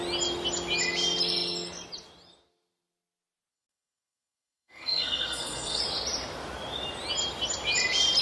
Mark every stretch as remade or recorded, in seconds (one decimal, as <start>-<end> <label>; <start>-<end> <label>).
0.0-3.5 recorded; 3.5-5.8 remade; 5.8-8.2 recorded